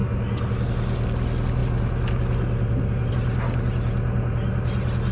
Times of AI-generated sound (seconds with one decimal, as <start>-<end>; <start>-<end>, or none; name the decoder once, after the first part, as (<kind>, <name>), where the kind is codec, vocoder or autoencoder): none